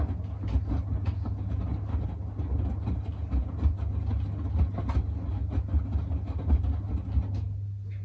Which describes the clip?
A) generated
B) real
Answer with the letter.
B